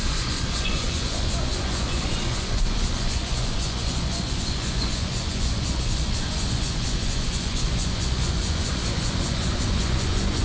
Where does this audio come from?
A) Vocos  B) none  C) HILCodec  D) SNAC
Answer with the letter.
A